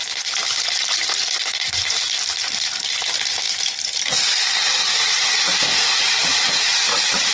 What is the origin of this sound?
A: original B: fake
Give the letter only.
A